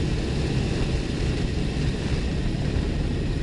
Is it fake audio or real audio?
real